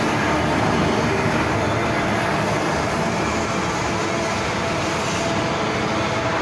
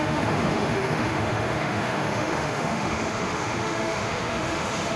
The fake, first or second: second